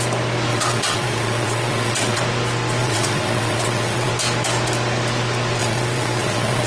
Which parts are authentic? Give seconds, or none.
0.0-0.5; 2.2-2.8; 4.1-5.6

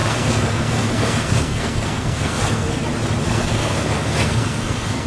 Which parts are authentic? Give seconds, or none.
2.8-3.3

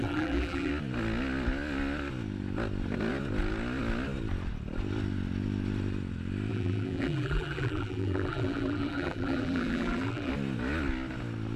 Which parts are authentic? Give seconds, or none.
0.7-6.5; 10.3-11.6

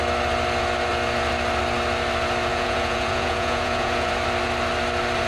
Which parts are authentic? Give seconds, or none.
0.0-2.5; 4.1-5.3

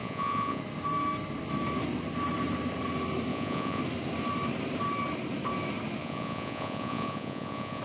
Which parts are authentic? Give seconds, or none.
0.6-3.3; 3.8-6.0